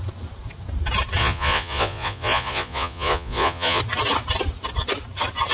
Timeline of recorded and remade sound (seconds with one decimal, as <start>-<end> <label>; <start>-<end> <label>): 0.0-1.2 recorded; 1.2-3.8 remade; 3.8-5.5 recorded